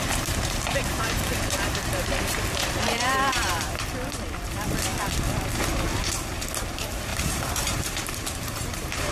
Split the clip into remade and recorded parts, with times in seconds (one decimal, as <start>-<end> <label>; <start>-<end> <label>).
0.0-4.9 remade; 4.9-6.5 recorded; 6.5-7.1 remade; 7.1-7.8 recorded; 7.8-9.1 remade